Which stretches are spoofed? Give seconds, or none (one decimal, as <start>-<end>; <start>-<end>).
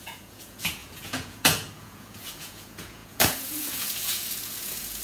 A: 0.0-5.0